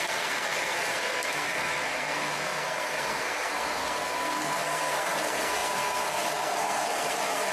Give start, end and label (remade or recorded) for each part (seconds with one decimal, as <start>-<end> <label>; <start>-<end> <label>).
0.0-7.5 remade